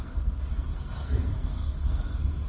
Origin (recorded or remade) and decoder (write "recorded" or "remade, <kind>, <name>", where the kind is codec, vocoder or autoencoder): remade, codec, SNAC